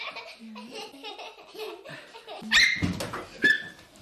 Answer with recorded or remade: recorded